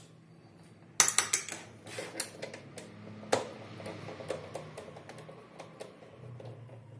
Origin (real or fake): real